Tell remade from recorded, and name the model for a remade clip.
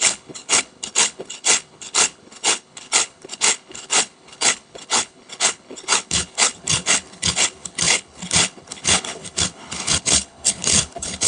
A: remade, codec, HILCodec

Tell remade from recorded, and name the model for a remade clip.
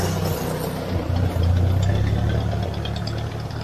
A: recorded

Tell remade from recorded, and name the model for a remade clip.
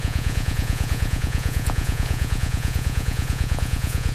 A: remade, vocoder, Vocos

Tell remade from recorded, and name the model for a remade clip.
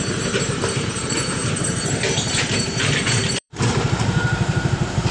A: remade, vocoder, BigVGAN v2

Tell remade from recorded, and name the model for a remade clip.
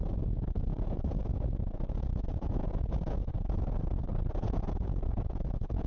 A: remade, vocoder, Vocos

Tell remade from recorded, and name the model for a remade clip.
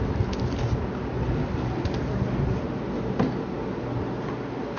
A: recorded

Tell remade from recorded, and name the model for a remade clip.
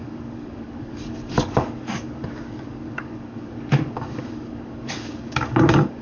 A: remade, codec, DAC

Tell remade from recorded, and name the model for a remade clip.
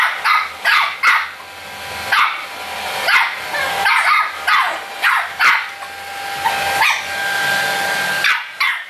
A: recorded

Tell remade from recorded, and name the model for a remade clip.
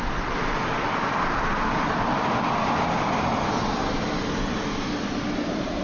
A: recorded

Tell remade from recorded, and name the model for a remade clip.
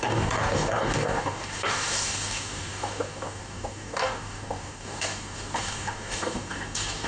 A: remade, codec, DAC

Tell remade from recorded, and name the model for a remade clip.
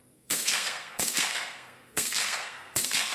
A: remade, codec, SNAC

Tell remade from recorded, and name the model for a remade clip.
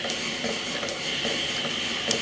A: recorded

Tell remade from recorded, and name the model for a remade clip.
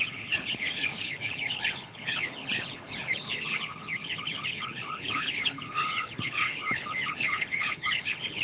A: remade, codec, HILCodec